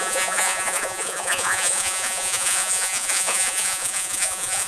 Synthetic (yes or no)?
yes